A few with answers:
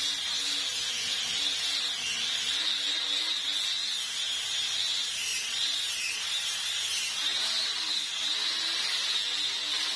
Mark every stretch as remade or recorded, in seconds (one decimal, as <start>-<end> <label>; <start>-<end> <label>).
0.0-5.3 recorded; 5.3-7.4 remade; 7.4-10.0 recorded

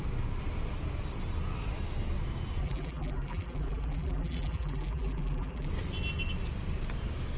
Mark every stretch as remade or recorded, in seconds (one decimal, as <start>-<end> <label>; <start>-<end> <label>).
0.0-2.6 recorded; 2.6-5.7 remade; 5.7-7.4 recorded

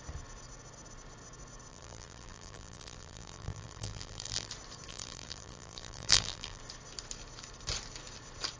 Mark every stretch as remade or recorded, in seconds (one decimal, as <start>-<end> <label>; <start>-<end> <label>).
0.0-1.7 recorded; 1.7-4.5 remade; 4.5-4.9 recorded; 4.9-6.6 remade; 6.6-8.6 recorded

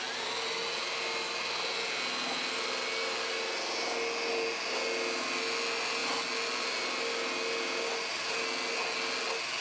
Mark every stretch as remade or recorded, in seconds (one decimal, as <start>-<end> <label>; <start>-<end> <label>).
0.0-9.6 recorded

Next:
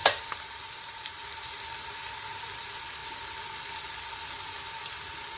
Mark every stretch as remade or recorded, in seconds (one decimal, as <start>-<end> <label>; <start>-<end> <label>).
0.0-2.0 remade; 2.0-5.4 recorded

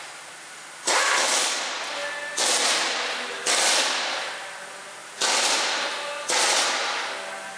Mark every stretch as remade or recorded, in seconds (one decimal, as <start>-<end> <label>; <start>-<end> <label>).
0.0-7.6 recorded

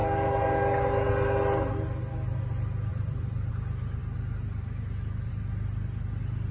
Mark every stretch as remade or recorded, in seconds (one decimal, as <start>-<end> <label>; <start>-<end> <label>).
0.0-2.9 recorded; 2.9-3.5 remade; 3.5-6.5 recorded

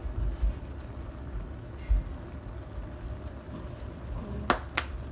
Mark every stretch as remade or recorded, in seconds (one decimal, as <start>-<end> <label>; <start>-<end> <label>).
0.0-5.1 recorded